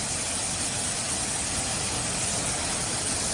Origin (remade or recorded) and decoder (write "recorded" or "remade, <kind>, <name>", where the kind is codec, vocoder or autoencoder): recorded